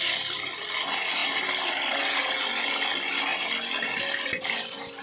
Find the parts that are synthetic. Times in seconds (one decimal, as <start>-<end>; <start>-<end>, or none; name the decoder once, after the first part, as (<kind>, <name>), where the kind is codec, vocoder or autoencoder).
none